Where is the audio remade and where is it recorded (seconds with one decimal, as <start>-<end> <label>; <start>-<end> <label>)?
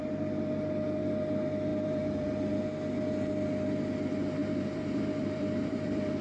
0.0-1.7 recorded; 1.7-2.5 remade; 2.5-4.4 recorded; 4.4-6.2 remade